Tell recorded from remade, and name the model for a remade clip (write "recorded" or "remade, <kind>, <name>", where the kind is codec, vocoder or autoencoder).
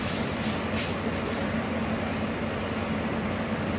recorded